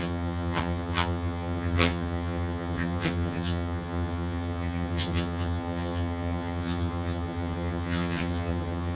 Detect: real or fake fake